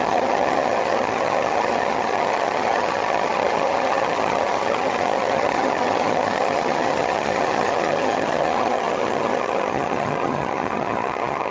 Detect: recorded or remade remade